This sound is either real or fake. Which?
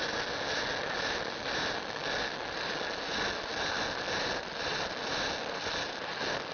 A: real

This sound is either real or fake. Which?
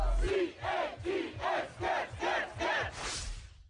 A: real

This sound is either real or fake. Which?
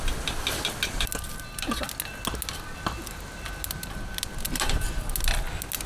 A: real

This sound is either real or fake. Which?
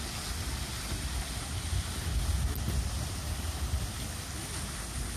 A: real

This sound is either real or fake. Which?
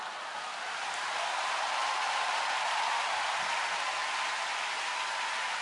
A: real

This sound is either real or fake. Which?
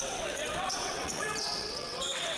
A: fake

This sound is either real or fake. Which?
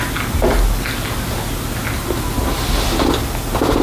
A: real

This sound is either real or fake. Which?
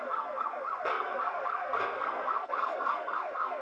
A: fake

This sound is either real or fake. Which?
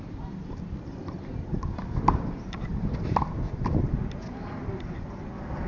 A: real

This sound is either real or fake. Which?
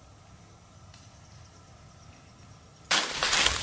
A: real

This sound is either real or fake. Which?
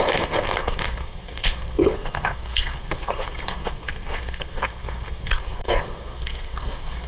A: fake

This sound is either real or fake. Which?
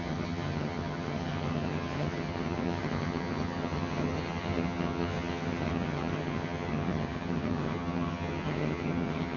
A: fake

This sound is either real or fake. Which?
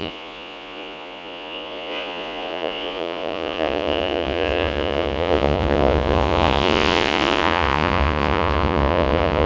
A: fake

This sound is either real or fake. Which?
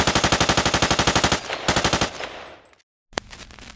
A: real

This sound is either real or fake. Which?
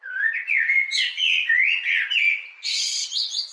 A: fake